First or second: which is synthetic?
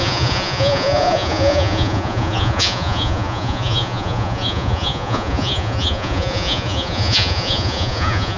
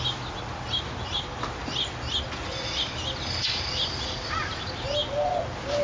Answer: first